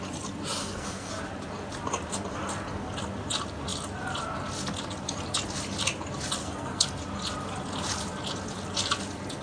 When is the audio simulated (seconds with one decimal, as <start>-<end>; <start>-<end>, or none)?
0.6-1.1; 6.4-6.9